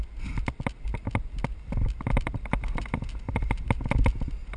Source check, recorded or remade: recorded